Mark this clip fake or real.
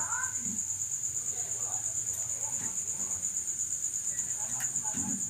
real